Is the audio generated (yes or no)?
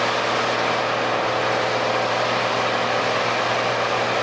no